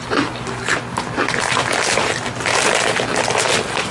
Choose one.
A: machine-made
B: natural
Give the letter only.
B